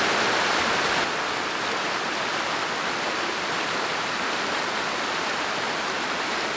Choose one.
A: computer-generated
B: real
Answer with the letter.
B